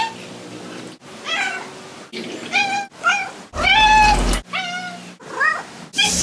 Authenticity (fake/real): real